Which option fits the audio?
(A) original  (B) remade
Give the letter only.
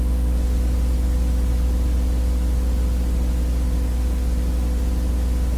A